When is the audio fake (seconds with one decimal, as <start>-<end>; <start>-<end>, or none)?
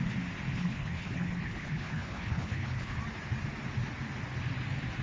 0.5-3.0